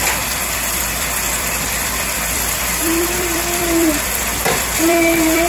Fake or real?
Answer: fake